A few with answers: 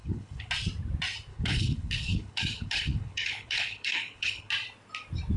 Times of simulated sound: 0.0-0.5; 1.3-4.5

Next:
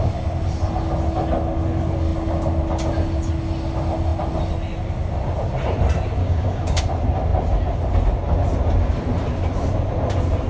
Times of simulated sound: 6.2-6.8

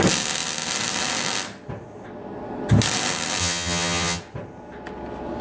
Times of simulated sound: 3.4-4.2

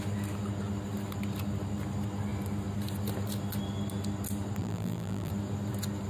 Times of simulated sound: 4.6-5.3

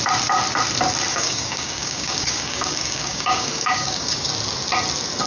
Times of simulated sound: 1.1-4.3

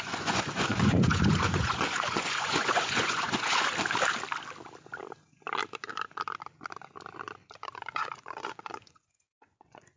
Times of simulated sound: 0.0-3.7; 7.9-10.0

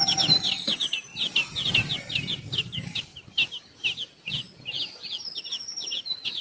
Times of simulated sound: 0.0-1.1; 1.7-3.1; 6.0-6.4